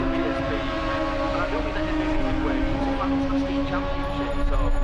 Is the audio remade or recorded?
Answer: recorded